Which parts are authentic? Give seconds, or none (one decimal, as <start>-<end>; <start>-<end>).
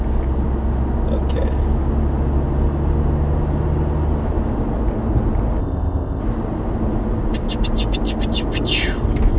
0.0-5.6; 6.2-9.4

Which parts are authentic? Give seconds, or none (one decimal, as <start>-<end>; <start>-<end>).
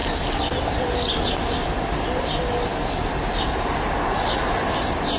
0.0-5.2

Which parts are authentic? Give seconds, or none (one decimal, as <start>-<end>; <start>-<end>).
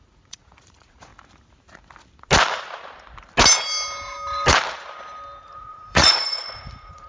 1.1-5.4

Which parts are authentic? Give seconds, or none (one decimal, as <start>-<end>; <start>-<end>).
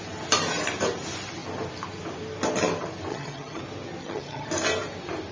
0.0-3.1; 3.6-4.0; 4.5-5.3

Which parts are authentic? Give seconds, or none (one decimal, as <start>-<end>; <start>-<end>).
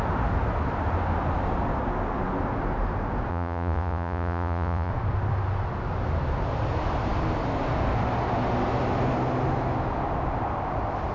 0.0-3.3; 4.9-11.1